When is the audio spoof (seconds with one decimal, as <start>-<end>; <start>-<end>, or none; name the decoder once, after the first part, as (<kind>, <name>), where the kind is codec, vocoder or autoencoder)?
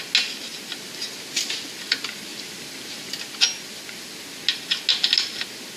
none